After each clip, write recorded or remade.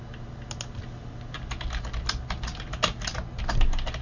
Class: recorded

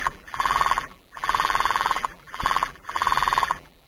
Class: remade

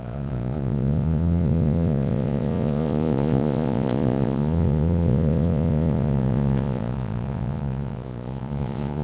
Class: remade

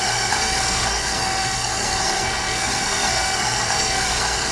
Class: remade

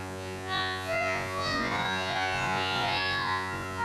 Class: remade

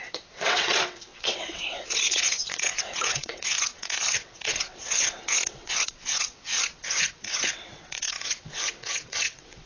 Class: remade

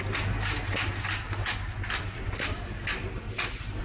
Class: recorded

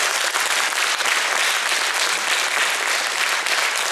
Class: recorded